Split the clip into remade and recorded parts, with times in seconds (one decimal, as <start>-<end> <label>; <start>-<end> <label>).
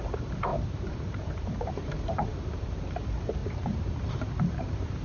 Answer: 0.0-5.0 remade